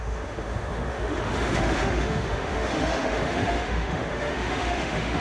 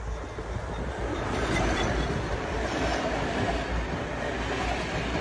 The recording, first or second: second